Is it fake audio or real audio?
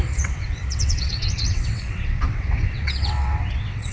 fake